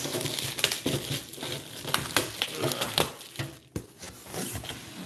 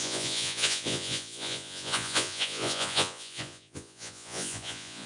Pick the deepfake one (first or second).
second